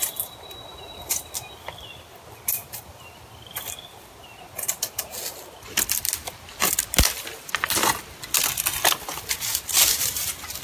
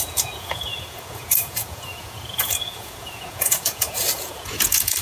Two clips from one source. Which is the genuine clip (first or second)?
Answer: first